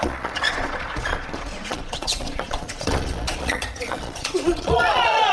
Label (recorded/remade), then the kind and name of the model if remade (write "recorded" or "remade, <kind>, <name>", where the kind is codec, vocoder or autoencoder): remade, vocoder, Vocos